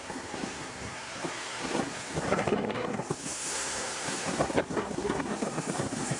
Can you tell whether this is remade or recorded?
remade